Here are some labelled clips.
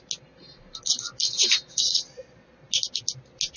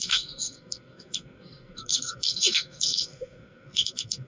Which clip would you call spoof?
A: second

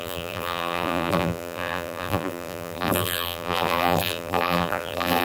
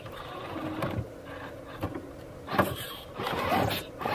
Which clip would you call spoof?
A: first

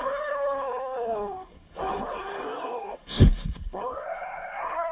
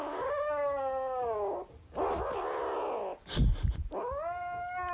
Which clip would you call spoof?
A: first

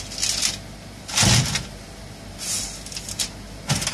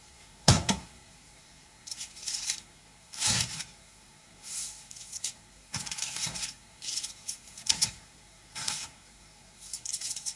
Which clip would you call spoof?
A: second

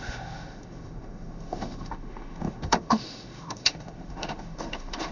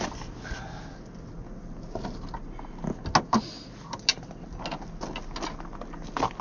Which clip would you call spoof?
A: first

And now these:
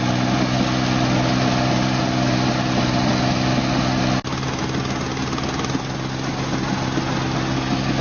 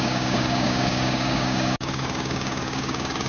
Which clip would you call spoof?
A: second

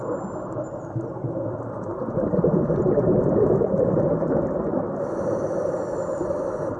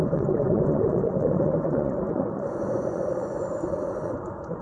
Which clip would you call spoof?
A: second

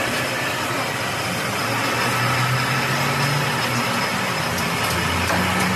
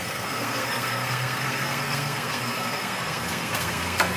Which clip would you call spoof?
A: second